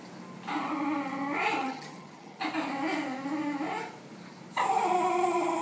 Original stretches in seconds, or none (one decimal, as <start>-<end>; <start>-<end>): 0.0-1.6; 2.4-5.6